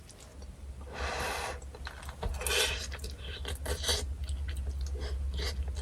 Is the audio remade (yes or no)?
no